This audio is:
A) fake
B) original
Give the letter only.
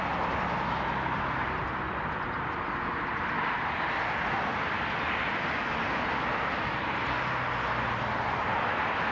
B